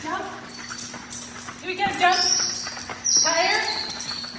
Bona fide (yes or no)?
yes